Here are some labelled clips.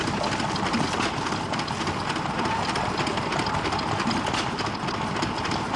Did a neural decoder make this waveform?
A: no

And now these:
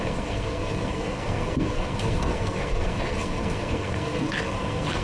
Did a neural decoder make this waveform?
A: yes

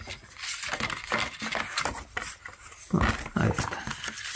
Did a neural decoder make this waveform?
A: no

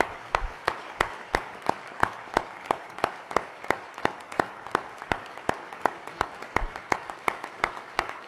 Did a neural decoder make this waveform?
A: yes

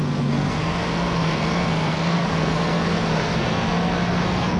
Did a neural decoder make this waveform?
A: yes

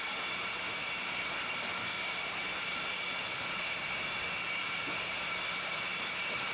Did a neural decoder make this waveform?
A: no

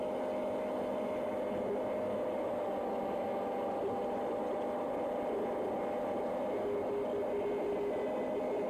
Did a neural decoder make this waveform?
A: no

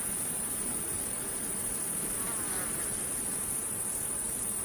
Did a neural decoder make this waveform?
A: yes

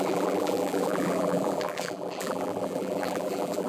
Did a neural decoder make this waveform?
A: yes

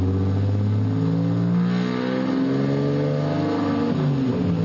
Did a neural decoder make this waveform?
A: no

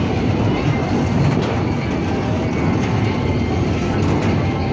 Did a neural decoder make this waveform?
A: no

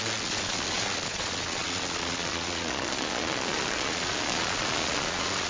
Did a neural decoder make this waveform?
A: yes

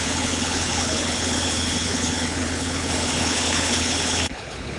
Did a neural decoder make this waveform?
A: yes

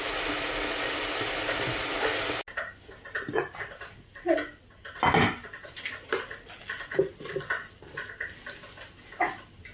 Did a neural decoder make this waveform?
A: no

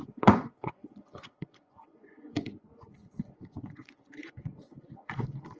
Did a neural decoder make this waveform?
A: yes